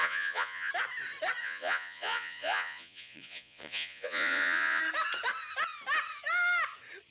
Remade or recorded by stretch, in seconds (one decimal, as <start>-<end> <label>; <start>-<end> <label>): 0.0-0.7 remade; 0.7-1.4 recorded; 1.4-4.8 remade; 4.8-7.1 recorded